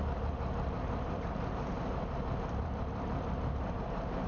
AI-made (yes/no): yes